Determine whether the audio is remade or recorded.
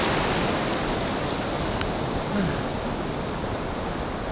recorded